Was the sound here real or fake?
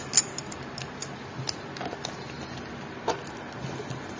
real